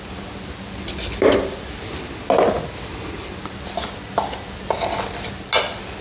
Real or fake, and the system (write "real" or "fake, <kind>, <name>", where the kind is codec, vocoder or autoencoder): real